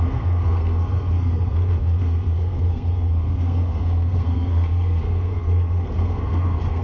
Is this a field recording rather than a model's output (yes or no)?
no